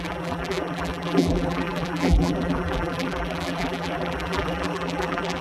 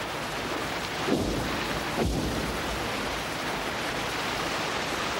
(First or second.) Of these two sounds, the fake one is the first